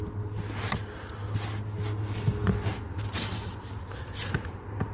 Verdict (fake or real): real